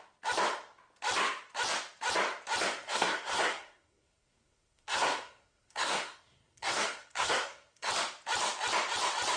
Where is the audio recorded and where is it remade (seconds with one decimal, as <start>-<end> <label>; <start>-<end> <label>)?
0.0-2.8 recorded; 2.8-7.9 remade; 7.9-9.4 recorded